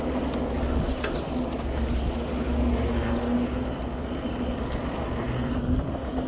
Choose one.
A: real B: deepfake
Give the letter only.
A